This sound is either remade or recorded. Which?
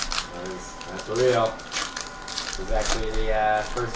recorded